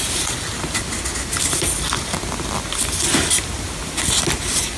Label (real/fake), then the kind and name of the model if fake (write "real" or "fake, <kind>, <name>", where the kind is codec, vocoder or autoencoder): real